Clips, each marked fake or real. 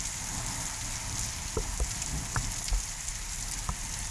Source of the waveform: real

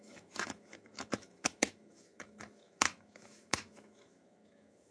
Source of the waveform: fake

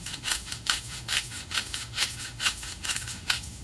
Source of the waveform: fake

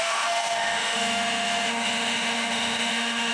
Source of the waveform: fake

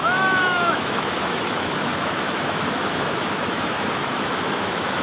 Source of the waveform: fake